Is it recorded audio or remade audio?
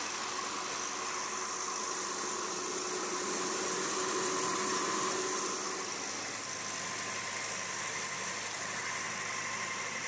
recorded